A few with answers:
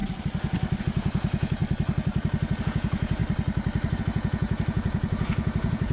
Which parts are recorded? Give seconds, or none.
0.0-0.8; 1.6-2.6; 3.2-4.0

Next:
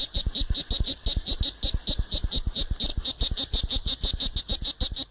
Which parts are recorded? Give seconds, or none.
0.0-5.1

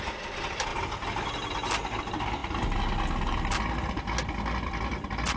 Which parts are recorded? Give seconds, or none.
0.0-5.4

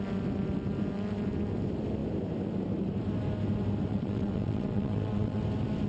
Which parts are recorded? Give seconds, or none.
0.0-3.9; 5.4-5.9

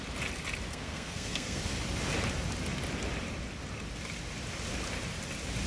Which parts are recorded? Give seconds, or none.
0.0-0.7; 1.6-5.7

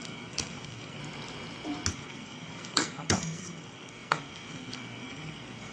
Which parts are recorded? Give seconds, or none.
1.0-1.9